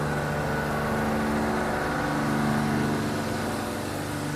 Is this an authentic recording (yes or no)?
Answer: yes